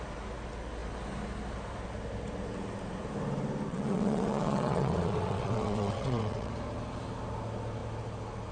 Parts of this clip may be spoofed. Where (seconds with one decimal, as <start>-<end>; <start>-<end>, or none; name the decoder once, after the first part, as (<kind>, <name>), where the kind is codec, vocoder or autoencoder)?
3.7-6.5 (vocoder, WaveNeXt)